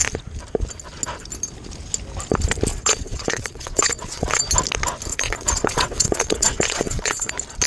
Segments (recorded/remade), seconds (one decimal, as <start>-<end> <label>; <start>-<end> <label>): 0.0-2.7 recorded; 2.7-4.4 remade; 4.4-5.1 recorded; 5.1-7.3 remade; 7.3-7.7 recorded